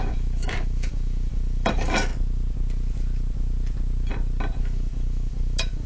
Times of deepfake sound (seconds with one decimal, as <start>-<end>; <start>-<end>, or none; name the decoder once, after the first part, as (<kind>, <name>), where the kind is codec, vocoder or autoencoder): 0.0-2.1 (autoencoder, DAC-VAE); 4.6-5.9